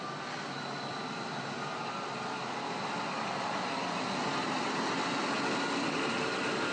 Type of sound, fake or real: real